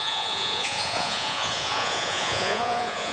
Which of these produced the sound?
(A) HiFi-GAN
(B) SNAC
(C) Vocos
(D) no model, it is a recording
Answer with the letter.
C